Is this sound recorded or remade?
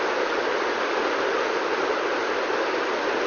recorded